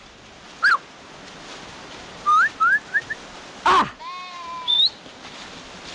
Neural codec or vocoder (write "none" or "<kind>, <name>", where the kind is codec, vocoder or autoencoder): none